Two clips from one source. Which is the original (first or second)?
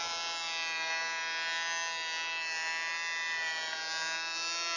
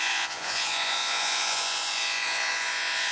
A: first